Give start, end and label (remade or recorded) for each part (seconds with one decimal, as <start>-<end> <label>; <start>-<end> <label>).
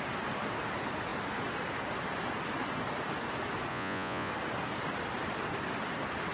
0.0-3.7 recorded; 3.7-4.3 remade; 4.3-6.3 recorded